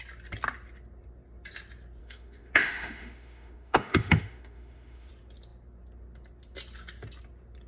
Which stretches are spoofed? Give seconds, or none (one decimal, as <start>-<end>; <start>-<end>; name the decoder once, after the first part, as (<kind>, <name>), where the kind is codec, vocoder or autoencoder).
2.0-5.1 (autoencoder, DAC-VAE)